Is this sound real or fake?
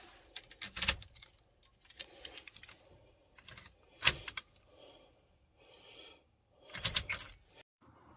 real